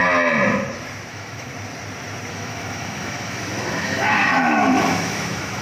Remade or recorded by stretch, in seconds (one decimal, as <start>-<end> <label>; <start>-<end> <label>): 0.0-1.1 recorded; 1.1-1.5 remade; 1.5-2.3 recorded; 2.3-5.6 remade